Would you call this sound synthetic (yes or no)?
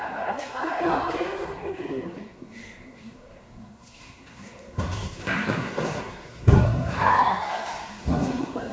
yes